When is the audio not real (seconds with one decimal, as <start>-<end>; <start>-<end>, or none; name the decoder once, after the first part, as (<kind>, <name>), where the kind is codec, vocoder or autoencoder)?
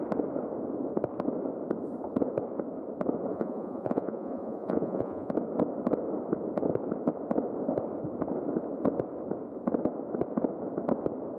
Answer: 3.3-5.3 (vocoder, Vocos)